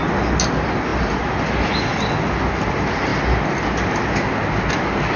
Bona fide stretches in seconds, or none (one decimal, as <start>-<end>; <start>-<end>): 0.0-5.2

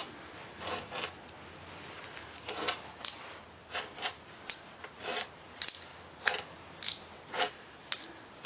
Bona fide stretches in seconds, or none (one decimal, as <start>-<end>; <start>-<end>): 0.0-3.6; 5.4-8.5

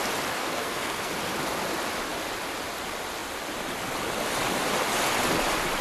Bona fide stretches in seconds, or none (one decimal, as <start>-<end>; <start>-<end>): 0.0-0.4; 1.1-5.8

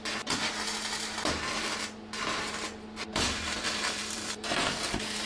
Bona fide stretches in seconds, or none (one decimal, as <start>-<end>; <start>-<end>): 0.0-3.1

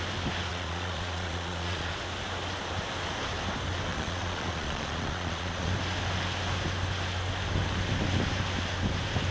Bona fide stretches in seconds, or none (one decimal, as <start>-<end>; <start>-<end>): 0.0-0.5; 1.9-3.9; 5.7-9.3

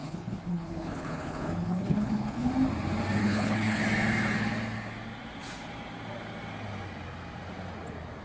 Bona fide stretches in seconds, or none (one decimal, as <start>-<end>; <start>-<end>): 2.5-3.2; 3.8-8.2

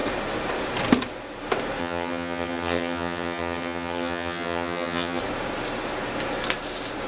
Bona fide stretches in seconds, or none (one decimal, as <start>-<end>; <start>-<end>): 0.0-1.8; 5.2-7.1